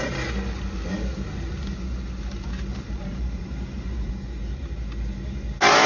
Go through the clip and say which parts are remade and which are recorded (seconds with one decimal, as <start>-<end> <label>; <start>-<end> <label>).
0.0-2.7 recorded; 2.7-4.1 remade; 4.1-5.9 recorded